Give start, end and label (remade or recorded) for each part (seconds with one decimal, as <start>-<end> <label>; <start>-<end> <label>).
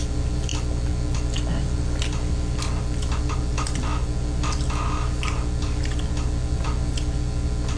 0.0-7.8 recorded